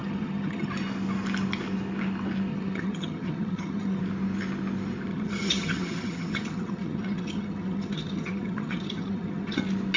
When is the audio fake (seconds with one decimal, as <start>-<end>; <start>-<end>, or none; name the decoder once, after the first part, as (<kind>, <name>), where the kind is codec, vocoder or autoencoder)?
0.0-0.7 (vocoder, HiFi-GAN); 2.5-4.0; 5.1-9.6